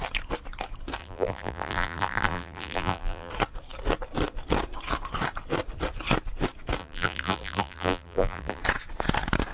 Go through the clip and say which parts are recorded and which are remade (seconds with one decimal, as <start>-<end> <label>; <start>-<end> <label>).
0.0-1.0 recorded; 1.0-3.3 remade; 3.3-6.8 recorded; 6.8-8.6 remade; 8.6-9.5 recorded